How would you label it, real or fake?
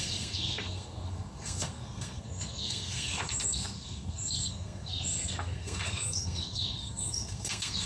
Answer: fake